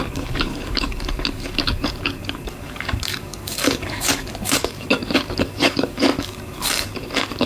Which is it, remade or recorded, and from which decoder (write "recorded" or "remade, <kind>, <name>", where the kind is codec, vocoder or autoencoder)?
remade, codec, DAC